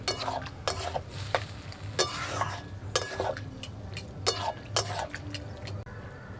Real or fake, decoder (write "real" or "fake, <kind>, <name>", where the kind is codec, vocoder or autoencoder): real